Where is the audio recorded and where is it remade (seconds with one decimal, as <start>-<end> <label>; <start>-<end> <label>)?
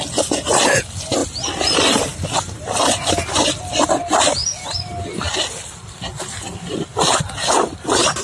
0.0-8.2 recorded